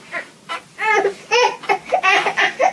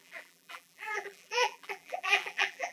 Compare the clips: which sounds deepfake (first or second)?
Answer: second